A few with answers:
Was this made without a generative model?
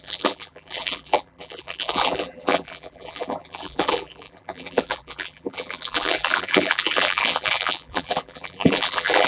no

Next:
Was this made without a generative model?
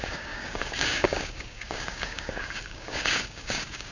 no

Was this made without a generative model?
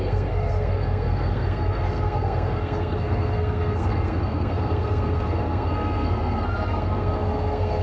no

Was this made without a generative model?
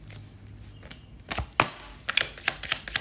yes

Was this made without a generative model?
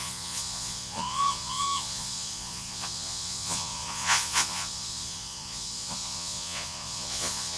no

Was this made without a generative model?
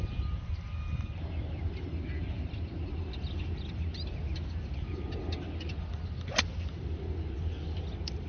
yes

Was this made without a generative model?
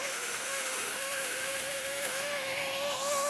no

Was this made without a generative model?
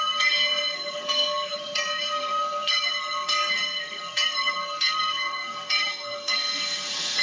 no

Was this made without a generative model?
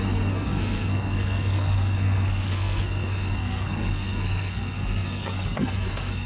no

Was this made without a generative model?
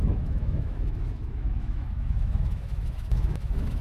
no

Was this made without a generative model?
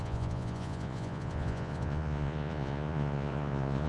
no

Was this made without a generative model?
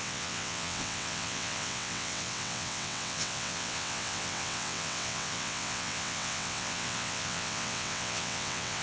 no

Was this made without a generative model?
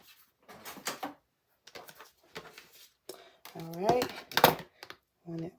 yes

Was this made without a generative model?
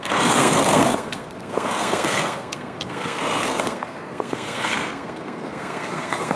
no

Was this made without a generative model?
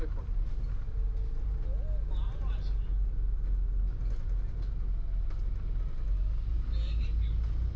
yes